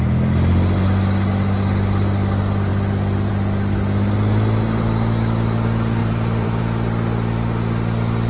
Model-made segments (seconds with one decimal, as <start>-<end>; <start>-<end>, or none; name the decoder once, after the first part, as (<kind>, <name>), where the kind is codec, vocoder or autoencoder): 6.0-6.6 (vocoder, BigVGAN v2)